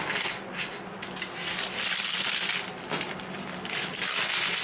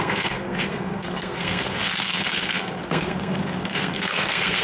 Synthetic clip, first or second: second